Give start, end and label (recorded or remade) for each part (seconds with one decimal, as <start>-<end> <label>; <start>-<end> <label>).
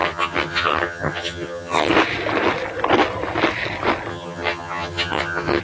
0.0-1.9 remade; 1.9-4.1 recorded; 4.1-5.6 remade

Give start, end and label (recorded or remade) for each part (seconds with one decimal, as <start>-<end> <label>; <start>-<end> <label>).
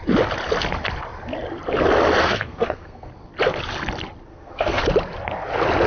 0.0-2.2 recorded; 2.2-3.1 remade; 3.1-4.3 recorded; 4.3-4.8 remade; 4.8-5.9 recorded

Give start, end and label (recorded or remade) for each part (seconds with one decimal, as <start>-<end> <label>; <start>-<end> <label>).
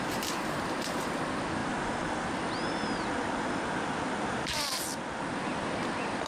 0.0-6.3 recorded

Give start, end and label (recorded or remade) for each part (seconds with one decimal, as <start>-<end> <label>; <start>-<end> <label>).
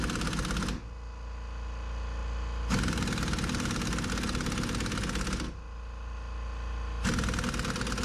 0.0-8.0 recorded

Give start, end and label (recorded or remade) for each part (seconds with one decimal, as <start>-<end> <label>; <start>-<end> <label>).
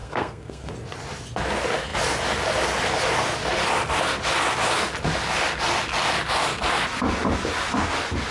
0.0-0.7 remade; 0.7-8.3 recorded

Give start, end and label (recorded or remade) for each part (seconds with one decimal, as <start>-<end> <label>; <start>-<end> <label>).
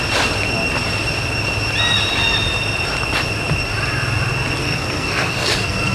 0.0-4.6 recorded; 4.6-5.9 remade